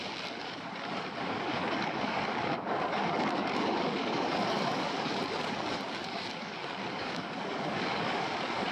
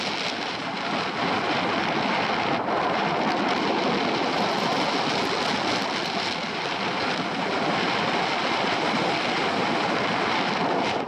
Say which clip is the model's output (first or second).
first